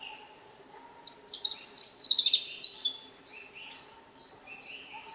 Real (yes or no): yes